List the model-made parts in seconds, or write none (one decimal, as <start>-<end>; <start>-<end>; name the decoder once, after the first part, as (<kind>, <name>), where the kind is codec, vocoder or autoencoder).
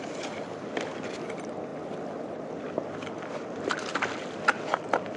none